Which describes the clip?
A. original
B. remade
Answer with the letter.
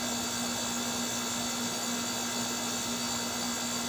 A